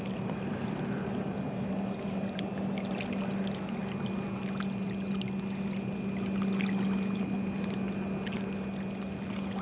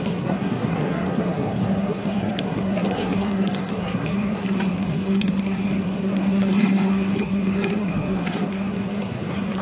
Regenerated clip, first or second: second